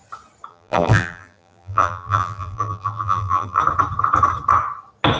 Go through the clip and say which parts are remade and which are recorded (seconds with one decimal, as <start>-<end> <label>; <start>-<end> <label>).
0.0-0.5 recorded; 0.5-3.6 remade; 3.6-5.2 recorded

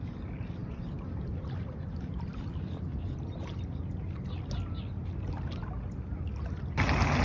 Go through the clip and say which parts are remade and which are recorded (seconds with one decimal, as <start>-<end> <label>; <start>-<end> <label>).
0.0-7.2 recorded